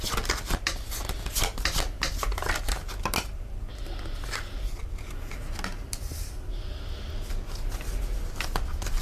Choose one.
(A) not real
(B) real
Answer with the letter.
B